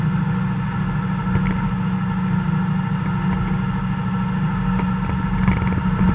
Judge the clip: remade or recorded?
recorded